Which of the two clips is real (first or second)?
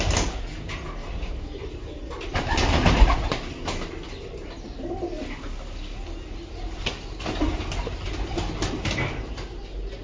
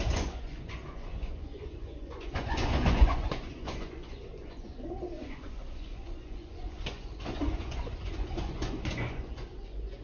first